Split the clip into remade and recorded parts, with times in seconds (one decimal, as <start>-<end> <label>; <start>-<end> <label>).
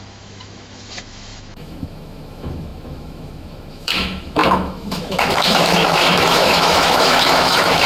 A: 0.0-7.9 remade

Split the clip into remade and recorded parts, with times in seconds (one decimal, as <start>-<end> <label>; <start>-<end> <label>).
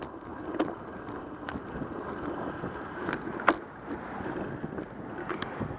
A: 0.0-5.2 recorded; 5.2-5.8 remade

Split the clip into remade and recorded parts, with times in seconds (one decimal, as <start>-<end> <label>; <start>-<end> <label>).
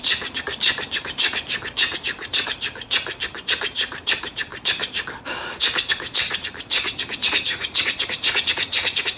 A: 0.0-4.5 remade; 4.5-5.9 recorded; 5.9-9.2 remade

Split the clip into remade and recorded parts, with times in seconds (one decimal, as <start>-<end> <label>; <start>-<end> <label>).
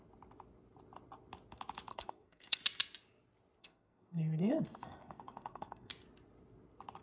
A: 0.0-1.9 recorded; 1.9-2.6 remade; 2.6-3.6 recorded; 3.6-5.9 remade; 5.9-7.0 recorded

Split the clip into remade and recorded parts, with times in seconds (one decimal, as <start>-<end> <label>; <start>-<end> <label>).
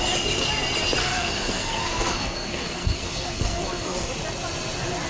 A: 0.0-1.0 recorded; 1.0-4.1 remade; 4.1-5.1 recorded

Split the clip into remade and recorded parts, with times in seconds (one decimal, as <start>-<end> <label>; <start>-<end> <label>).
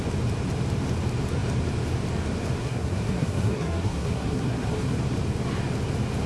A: 0.0-2.6 recorded; 2.6-5.0 remade; 5.0-6.3 recorded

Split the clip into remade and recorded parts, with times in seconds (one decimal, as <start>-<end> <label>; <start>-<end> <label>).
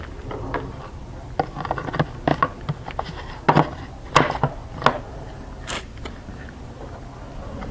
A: 0.0-7.7 recorded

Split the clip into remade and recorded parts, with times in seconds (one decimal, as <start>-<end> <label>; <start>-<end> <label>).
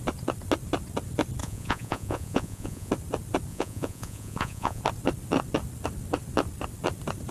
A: 0.0-1.4 recorded; 1.4-2.9 remade; 2.9-3.5 recorded; 3.5-4.8 remade; 4.8-7.3 recorded